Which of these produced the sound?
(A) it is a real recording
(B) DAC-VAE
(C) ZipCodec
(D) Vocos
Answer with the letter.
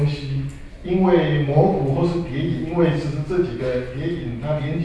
A